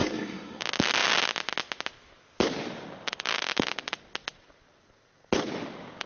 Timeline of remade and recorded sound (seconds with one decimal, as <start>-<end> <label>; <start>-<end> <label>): 0.0-0.6 remade; 0.6-6.1 recorded